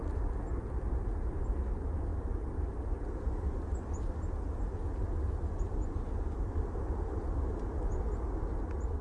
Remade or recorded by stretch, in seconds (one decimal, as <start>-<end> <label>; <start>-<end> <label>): 0.0-9.0 recorded